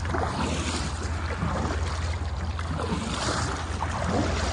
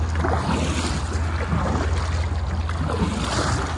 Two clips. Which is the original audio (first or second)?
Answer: second